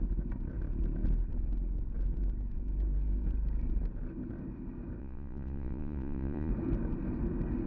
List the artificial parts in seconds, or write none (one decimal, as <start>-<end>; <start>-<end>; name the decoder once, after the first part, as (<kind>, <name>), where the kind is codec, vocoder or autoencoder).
5.0-6.5 (vocoder, Vocos)